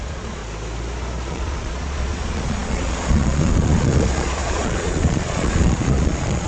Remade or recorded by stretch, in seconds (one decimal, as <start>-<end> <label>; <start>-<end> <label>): 0.0-0.4 remade; 0.4-1.3 recorded; 1.3-6.5 remade